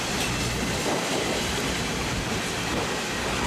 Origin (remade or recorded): recorded